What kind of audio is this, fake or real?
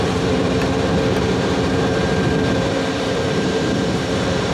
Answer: fake